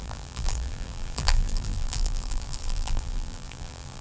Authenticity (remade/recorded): remade